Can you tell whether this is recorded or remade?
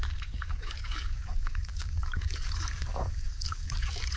remade